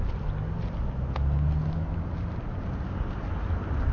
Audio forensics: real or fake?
real